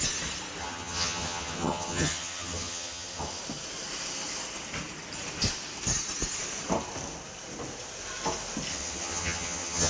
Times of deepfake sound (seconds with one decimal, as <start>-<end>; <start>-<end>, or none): 0.6-3.4; 8.7-9.9